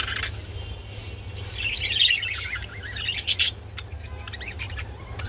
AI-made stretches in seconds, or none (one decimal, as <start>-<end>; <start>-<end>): none